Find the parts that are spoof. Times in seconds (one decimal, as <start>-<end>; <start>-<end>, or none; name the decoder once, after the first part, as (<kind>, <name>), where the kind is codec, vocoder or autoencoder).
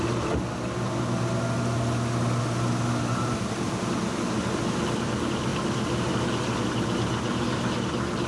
none